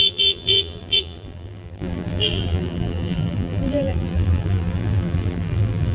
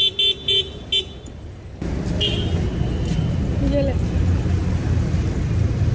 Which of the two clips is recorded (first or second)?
second